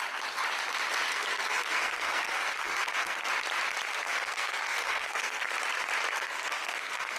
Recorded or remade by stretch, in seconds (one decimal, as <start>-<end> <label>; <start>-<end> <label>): 0.0-1.1 recorded; 1.1-3.3 remade; 3.3-3.9 recorded; 3.9-5.4 remade; 5.4-6.1 recorded; 6.1-7.2 remade